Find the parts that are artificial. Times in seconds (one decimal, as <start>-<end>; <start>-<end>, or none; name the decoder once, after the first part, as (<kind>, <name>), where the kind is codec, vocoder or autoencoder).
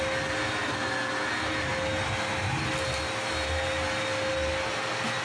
none